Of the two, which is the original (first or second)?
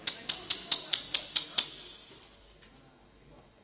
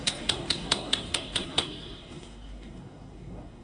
first